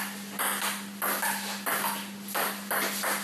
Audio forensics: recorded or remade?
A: recorded